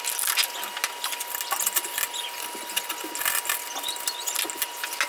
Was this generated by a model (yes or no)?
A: no